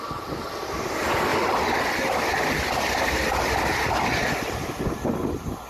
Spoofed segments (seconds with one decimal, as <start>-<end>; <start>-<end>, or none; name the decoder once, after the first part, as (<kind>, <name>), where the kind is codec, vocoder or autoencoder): none